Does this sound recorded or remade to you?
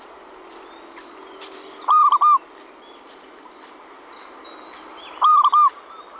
recorded